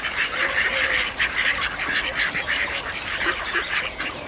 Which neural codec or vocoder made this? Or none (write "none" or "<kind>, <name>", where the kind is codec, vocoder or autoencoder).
vocoder, BigVGAN v2